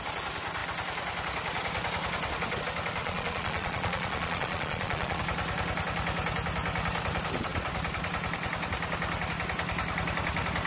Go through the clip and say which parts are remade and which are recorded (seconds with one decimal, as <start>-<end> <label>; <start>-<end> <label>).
0.0-3.0 recorded; 3.0-5.2 remade; 5.2-10.7 recorded